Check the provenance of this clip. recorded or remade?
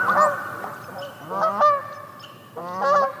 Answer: recorded